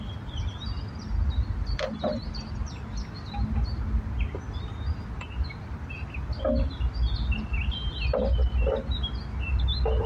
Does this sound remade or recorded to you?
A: recorded